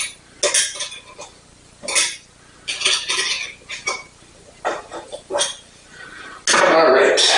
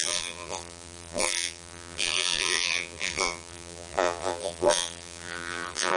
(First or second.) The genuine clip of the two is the first